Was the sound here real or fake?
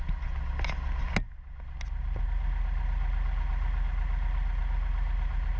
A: real